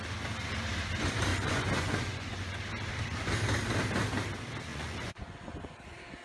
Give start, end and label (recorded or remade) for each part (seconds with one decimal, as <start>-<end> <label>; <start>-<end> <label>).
0.0-1.3 recorded; 1.3-2.6 remade; 2.6-4.7 recorded; 4.7-5.8 remade; 5.8-6.2 recorded